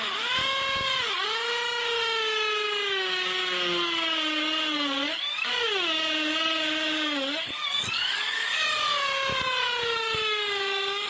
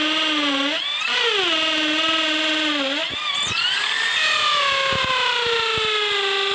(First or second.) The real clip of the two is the second